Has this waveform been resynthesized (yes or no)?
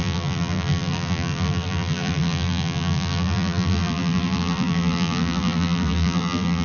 yes